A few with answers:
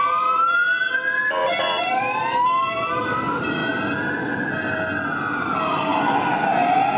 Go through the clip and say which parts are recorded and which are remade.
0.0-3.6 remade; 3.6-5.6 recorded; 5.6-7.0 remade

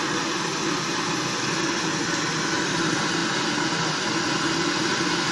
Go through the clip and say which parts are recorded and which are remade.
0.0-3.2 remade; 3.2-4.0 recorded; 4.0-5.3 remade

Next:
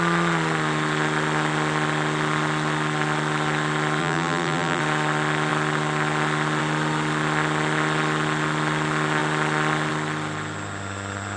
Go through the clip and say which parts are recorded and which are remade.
0.0-4.0 recorded; 4.0-4.8 remade; 4.8-11.4 recorded

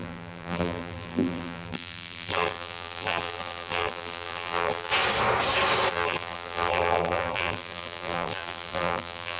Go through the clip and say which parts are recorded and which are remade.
0.0-4.9 remade; 4.9-5.9 recorded; 5.9-9.4 remade

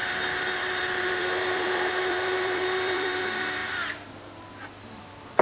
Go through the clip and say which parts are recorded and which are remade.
0.0-3.6 remade; 3.6-4.8 recorded; 4.8-5.4 remade

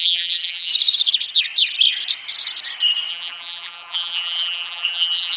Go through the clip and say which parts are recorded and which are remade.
0.0-0.7 remade; 0.7-3.1 recorded; 3.1-5.4 remade

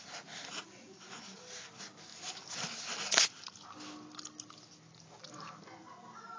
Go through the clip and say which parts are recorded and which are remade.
0.0-6.4 recorded

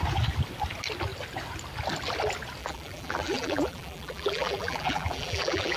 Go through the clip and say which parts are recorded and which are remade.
0.0-2.6 recorded; 2.6-5.8 remade